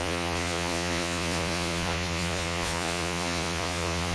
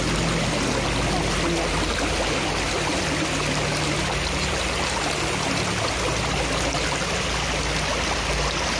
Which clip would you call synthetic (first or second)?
first